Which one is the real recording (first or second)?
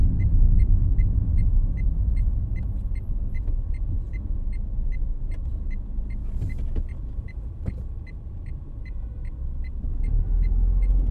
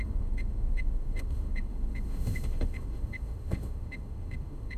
first